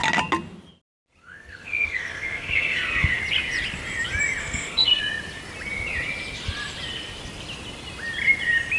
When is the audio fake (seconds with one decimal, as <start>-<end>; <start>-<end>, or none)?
1.2-3.2; 4.4-5.0